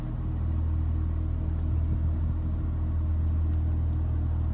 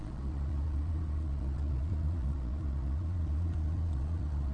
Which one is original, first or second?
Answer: first